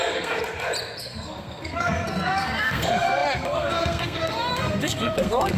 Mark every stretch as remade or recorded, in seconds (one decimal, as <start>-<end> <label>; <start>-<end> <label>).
0.0-0.4 remade; 0.4-1.0 recorded; 1.0-5.6 remade